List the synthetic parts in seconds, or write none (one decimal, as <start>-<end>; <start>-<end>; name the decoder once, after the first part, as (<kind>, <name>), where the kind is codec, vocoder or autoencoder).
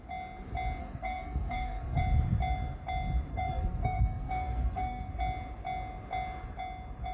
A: 0.8-2.0 (codec, SNAC); 3.3-5.1